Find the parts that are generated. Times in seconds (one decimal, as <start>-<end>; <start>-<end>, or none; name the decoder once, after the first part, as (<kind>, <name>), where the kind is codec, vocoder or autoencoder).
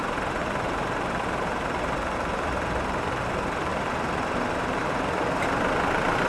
0.4-3.3 (vocoder, BigVGAN v2); 3.7-4.8